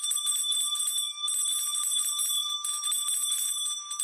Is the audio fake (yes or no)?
yes